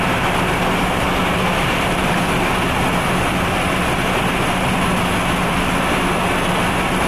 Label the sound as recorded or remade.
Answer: recorded